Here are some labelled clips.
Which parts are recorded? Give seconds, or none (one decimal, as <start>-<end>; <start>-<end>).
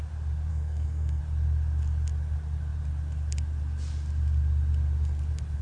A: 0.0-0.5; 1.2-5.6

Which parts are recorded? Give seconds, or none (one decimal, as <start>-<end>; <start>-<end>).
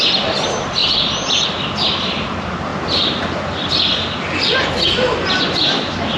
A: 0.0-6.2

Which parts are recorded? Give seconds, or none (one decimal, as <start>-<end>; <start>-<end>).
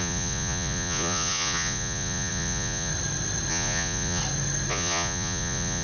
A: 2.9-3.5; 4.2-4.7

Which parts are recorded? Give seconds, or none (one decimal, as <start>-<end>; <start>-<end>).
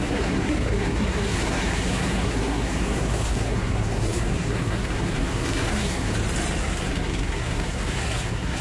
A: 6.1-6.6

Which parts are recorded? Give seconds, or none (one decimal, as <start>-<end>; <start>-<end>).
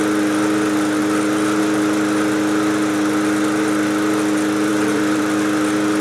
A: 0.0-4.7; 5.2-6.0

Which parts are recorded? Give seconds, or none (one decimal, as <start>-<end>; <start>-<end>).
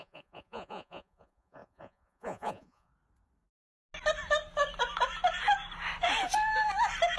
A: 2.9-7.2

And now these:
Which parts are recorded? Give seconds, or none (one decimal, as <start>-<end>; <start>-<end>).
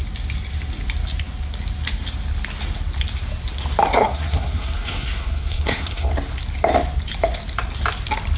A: 0.0-4.0; 6.1-8.4